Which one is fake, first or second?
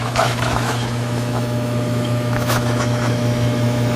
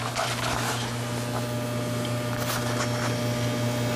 first